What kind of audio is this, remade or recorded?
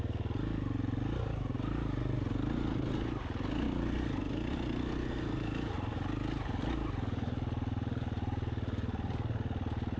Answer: recorded